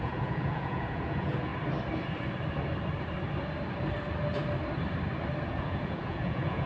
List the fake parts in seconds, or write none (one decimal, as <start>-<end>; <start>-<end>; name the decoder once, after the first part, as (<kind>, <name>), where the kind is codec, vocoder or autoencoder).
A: 0.0-1.5 (vocoder, Vocos); 5.5-6.7

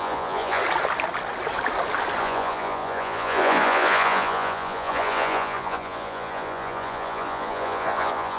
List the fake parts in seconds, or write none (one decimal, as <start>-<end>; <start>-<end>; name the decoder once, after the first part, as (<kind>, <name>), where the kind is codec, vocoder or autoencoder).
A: 0.0-0.6 (vocoder, Vocos); 2.2-8.4

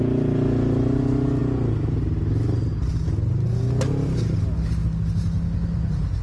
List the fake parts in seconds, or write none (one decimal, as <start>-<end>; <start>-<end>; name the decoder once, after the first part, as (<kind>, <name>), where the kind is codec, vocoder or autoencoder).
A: none

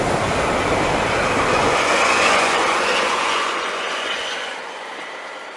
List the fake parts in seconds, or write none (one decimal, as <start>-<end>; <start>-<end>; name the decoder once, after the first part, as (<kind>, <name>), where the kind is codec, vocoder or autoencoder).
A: 1.5-4.9 (vocoder, Vocos)

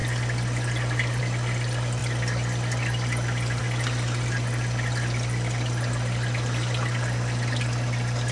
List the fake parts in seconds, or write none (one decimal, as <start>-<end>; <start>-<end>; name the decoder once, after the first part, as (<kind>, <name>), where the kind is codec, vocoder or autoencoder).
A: none

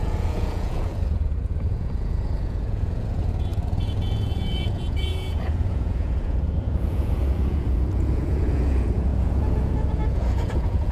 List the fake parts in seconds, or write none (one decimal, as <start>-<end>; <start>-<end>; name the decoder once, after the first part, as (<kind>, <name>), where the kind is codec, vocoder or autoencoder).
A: 0.0-10.9 (vocoder, Vocos)

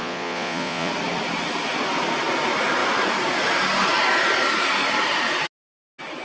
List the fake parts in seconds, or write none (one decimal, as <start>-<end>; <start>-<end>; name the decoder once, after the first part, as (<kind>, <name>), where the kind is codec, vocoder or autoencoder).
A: 0.0-0.9 (vocoder, Vocos)

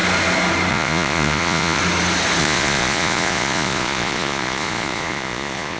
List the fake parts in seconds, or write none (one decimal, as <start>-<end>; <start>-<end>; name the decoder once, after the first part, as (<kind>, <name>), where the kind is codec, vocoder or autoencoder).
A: 0.7-1.8 (vocoder, Vocos); 2.4-5.8